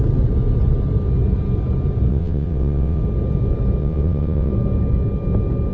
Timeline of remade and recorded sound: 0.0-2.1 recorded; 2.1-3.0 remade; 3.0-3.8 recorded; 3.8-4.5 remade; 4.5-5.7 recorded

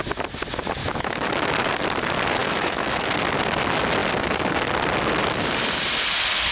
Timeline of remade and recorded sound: 0.0-0.8 recorded; 0.8-1.3 remade; 1.3-2.4 recorded; 2.4-3.1 remade; 3.1-6.5 recorded

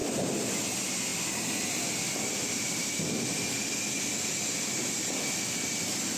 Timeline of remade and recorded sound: 0.0-6.2 recorded

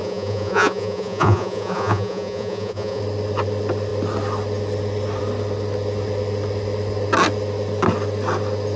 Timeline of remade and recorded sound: 0.0-3.0 remade; 3.0-8.8 recorded

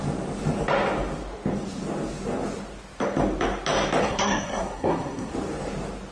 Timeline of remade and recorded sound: 0.0-4.0 recorded; 4.0-5.3 remade; 5.3-6.1 recorded